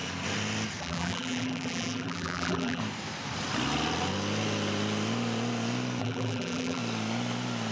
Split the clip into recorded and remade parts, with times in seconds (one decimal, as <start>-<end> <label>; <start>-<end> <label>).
0.0-0.8 recorded; 0.8-2.8 remade; 2.8-6.0 recorded; 6.0-6.8 remade; 6.8-7.7 recorded